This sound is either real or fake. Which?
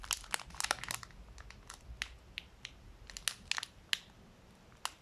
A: real